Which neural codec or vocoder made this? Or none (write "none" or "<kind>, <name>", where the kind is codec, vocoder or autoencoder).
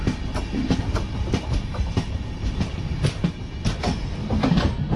none